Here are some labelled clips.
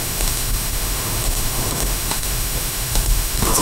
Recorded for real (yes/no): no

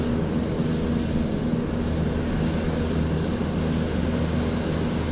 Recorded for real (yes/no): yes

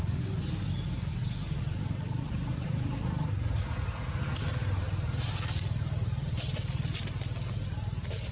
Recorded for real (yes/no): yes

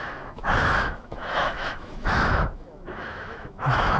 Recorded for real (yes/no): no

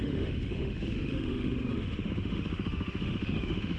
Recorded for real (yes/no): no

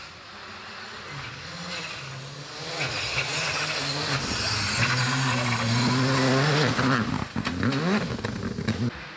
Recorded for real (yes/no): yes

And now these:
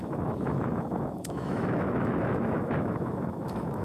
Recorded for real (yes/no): no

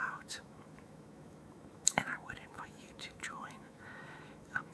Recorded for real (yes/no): no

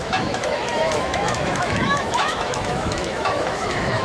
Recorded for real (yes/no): no